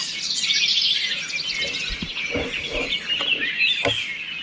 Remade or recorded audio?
recorded